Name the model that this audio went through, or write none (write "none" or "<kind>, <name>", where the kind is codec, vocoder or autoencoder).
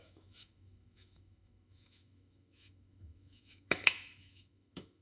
autoencoder, DAC-VAE